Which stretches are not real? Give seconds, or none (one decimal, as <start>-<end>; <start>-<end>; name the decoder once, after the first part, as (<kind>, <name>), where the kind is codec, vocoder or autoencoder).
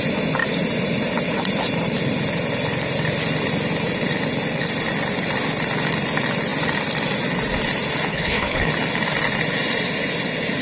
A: 8.1-8.7 (codec, HILCodec)